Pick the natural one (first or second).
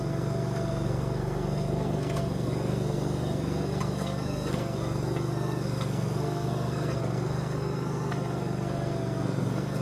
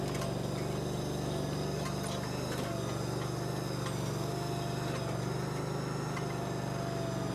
second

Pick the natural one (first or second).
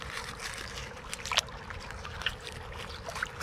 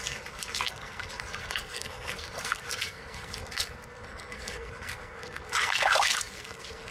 first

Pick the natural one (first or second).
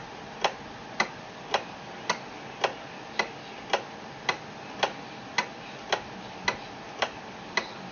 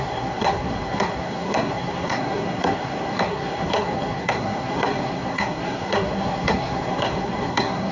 first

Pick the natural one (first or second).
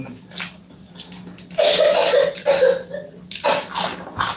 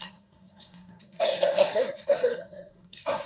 first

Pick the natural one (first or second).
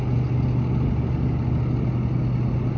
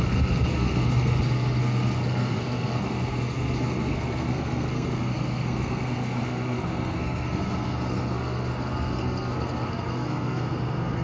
first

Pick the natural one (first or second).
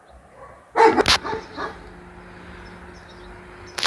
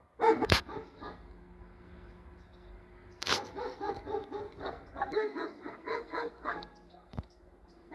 first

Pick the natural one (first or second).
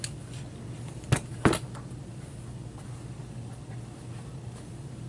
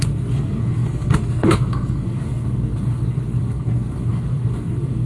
first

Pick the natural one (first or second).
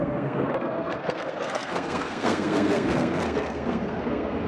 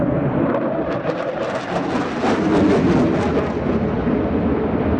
second